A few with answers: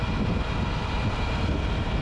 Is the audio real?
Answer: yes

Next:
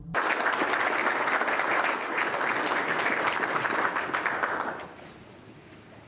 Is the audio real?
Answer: yes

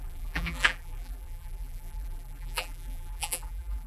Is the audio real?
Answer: no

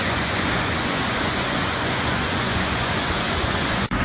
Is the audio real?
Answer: no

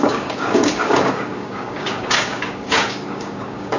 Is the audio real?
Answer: no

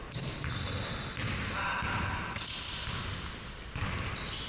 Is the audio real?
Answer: yes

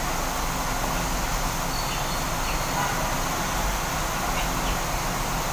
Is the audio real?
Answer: yes